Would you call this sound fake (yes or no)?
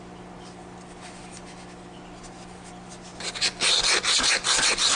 no